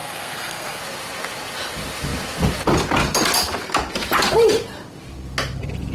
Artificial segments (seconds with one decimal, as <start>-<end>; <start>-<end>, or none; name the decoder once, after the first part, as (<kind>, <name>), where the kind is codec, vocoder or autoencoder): 0.0-0.8 (codec, SNAC)